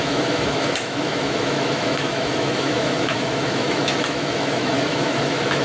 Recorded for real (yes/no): no